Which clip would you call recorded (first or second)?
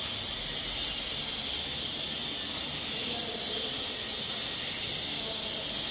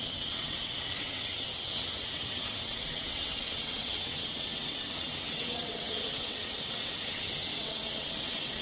first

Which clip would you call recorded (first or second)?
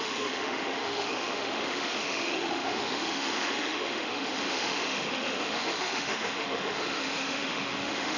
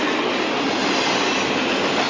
second